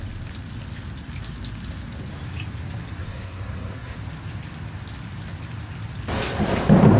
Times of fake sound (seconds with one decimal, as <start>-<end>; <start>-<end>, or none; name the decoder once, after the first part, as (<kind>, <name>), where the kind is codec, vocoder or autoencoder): 3.0-4.0 (codec, SNAC)